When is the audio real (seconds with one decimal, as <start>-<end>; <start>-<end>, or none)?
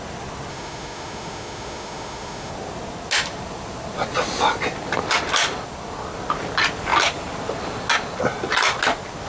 0.0-0.5; 2.5-9.3